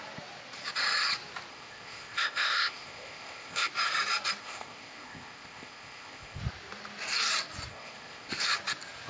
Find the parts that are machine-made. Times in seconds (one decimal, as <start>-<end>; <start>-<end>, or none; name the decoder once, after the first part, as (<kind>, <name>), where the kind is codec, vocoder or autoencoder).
1.5-3.7 (codec, ZipCodec); 4.4-6.4; 7.7-8.3